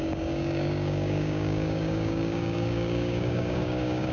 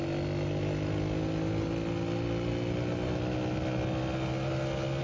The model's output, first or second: first